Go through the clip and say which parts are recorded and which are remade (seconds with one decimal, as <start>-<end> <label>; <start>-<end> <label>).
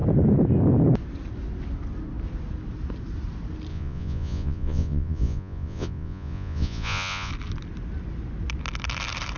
0.0-3.7 recorded; 3.7-7.3 remade; 7.3-9.4 recorded